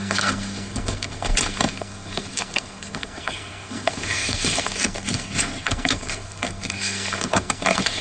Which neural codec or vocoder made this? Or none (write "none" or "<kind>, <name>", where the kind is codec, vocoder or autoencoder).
codec, SNAC